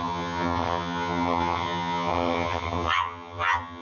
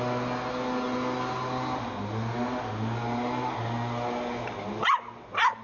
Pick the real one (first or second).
second